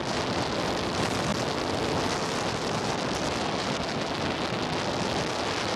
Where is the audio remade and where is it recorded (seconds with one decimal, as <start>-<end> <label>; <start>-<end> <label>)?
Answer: 0.0-5.8 recorded